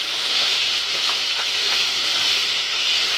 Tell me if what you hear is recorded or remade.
remade